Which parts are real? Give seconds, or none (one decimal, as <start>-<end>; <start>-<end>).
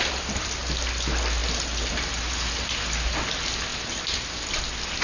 0.0-3.7; 4.6-5.0